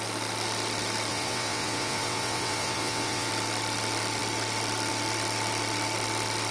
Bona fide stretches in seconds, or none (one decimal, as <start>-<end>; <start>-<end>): 0.0-1.1; 3.3-6.5